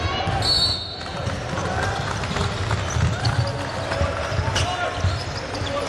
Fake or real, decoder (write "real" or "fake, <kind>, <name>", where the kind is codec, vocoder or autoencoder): real